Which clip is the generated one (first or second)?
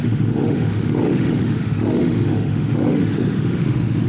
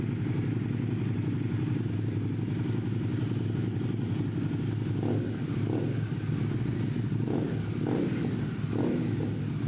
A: first